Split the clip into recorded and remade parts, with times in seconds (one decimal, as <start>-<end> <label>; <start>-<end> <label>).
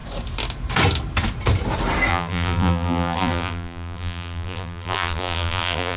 0.0-2.1 recorded; 2.1-6.0 remade